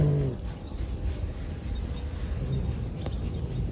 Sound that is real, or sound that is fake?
real